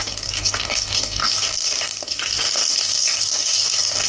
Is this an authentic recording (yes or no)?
no